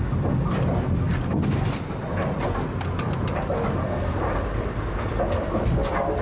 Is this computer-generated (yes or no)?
no